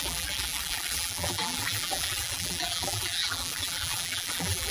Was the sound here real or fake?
fake